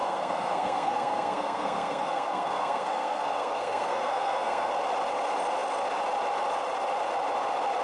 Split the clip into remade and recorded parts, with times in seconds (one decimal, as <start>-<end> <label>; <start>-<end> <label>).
0.0-4.7 remade; 4.7-7.8 recorded

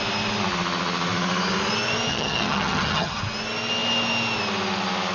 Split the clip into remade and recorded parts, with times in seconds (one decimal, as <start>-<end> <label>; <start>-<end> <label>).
0.0-2.1 recorded; 2.1-3.2 remade; 3.2-5.1 recorded

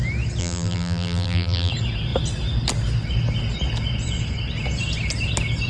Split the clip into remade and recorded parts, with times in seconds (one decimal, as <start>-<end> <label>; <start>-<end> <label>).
0.0-0.4 recorded; 0.4-1.7 remade; 1.7-5.7 recorded

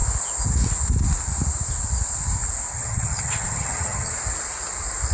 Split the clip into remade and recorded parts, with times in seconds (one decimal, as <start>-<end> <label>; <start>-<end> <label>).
0.0-2.7 recorded; 2.7-4.1 remade; 4.1-5.1 recorded